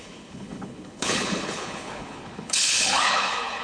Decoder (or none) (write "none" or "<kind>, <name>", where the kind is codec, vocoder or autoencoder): codec, HILCodec